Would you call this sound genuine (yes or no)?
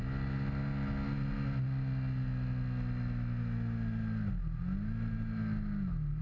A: yes